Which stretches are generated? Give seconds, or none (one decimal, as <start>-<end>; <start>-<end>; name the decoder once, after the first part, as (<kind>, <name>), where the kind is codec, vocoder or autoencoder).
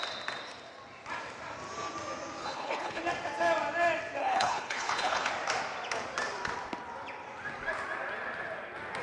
2.4-3.0 (codec, HILCodec); 4.2-5.3